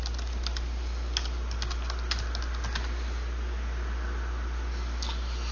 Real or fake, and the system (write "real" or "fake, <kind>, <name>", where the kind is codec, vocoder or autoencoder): real